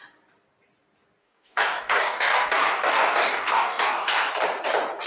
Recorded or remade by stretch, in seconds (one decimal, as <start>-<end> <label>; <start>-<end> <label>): 0.0-1.2 recorded; 1.2-4.3 remade; 4.3-5.1 recorded